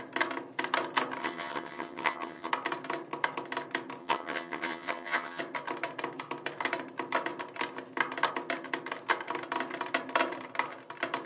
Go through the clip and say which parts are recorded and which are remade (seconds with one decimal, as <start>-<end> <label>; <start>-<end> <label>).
0.0-1.2 recorded; 1.2-2.5 remade; 2.5-4.0 recorded; 4.0-5.4 remade; 5.4-11.3 recorded